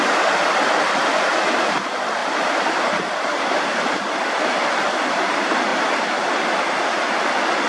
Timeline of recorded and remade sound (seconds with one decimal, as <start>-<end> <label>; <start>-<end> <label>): 0.0-2.2 recorded; 2.2-4.4 remade; 4.4-7.7 recorded